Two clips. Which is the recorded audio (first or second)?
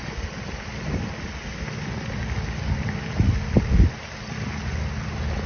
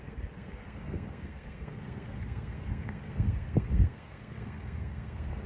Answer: first